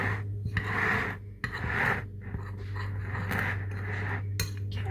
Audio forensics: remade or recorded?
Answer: recorded